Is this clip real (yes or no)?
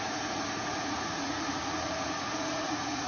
no